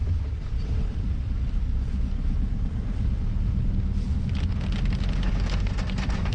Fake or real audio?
real